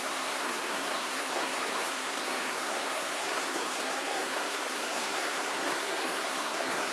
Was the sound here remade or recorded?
remade